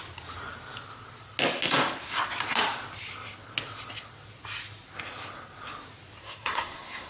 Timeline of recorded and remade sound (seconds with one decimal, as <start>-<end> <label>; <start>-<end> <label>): 0.0-6.2 recorded; 6.2-7.1 remade